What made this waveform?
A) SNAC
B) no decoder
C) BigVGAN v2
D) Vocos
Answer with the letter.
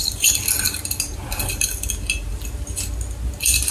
B